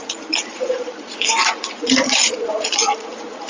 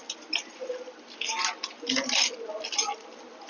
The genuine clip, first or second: second